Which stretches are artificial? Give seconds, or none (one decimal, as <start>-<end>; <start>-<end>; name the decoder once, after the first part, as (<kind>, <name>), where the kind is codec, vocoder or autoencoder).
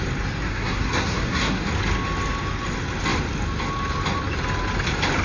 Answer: 0.4-1.6 (codec, SNAC)